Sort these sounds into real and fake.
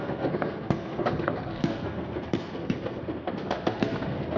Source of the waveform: fake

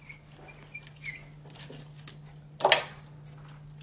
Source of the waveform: real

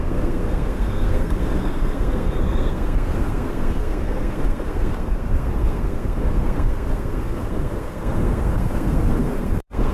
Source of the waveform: fake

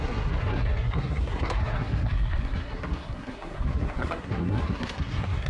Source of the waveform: fake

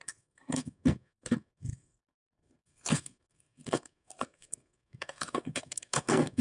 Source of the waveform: fake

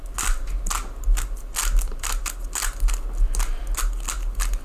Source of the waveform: real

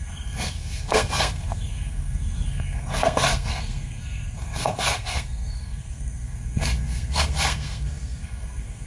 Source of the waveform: fake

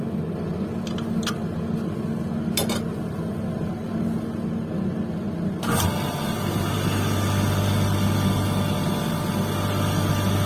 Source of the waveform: real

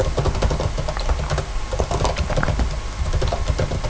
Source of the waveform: real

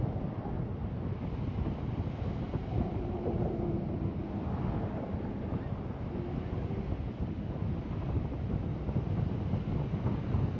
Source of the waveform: real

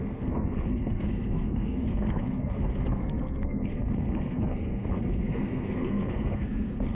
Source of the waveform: fake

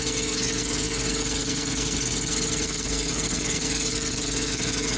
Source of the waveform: fake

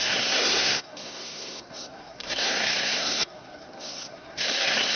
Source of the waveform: fake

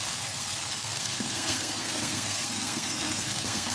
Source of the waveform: fake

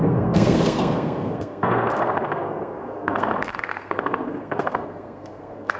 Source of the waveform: fake